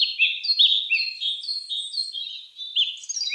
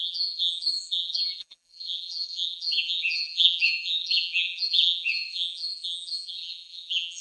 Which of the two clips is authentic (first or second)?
first